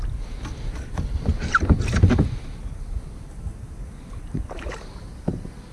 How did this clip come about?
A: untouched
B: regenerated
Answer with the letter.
A